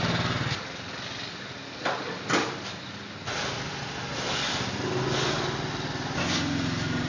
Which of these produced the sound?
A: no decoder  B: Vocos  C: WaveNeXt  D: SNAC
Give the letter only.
A